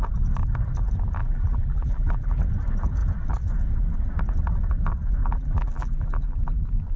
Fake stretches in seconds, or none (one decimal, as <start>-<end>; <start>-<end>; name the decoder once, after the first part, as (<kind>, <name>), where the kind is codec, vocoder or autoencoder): 1.2-2.4 (vocoder, BigVGAN v2); 5.2-6.6